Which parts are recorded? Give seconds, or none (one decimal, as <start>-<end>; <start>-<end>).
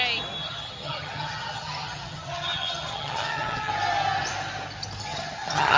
0.0-0.4; 3.7-5.1